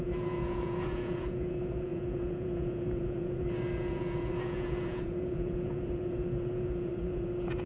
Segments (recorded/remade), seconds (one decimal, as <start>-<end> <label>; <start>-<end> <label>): 0.0-7.7 remade